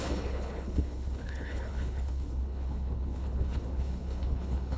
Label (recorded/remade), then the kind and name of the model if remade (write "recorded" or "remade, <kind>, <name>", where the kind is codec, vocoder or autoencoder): remade, codec, HILCodec